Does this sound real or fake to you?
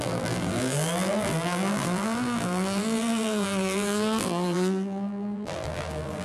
fake